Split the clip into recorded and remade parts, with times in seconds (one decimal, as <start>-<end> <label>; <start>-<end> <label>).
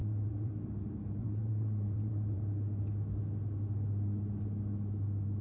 0.0-0.5 remade; 0.5-1.2 recorded; 1.2-2.4 remade; 2.4-5.4 recorded